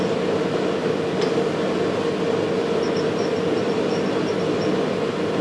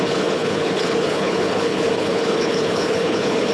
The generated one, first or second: second